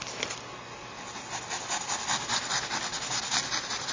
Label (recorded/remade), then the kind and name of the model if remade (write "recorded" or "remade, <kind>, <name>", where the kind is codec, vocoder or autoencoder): recorded